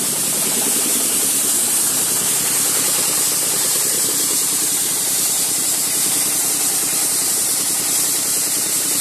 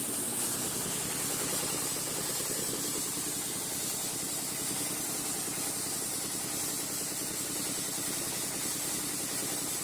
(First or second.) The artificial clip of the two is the first